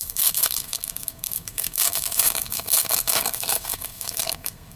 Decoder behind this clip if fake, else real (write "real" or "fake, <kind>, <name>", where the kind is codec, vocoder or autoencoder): fake, codec, SNAC